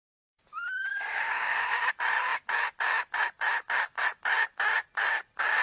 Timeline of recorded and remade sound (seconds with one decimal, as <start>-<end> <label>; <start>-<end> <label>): 0.0-0.9 recorded; 0.9-1.9 remade; 1.9-5.6 recorded